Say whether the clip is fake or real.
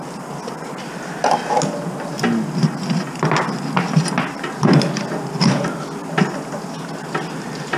real